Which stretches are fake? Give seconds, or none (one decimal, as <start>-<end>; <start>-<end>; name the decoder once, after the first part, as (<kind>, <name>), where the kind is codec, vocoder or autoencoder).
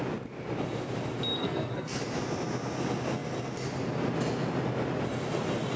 1.4-2.0 (codec, SNAC)